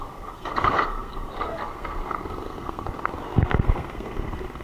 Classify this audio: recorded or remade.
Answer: remade